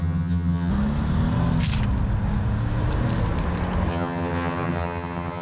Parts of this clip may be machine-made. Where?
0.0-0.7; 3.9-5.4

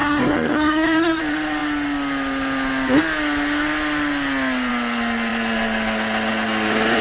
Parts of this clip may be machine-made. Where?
0.0-1.2

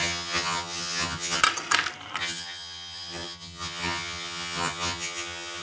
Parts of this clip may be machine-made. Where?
0.0-1.4; 2.2-5.6

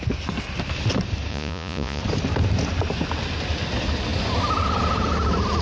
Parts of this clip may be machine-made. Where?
1.3-2.0

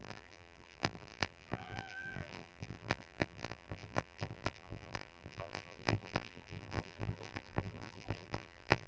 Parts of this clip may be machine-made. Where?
0.0-8.9

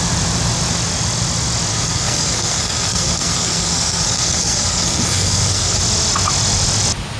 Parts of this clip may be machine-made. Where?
1.7-5.8

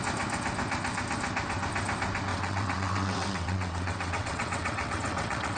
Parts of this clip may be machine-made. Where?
2.3-5.6